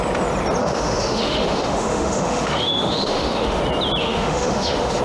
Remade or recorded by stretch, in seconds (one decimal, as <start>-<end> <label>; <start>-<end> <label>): 0.0-0.6 recorded; 0.6-3.6 remade; 3.6-4.0 recorded; 4.0-5.0 remade